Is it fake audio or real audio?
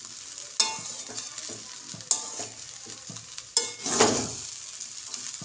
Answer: real